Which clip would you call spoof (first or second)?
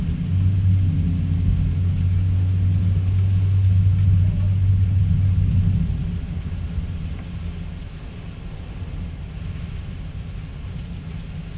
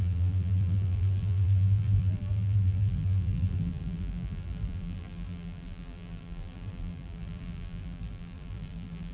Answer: second